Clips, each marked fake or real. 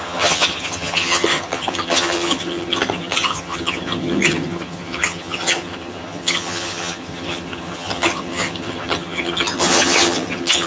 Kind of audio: fake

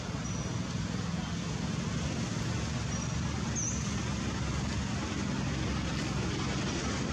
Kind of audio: real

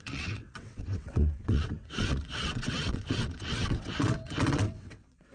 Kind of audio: fake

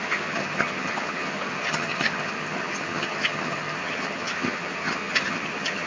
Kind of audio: fake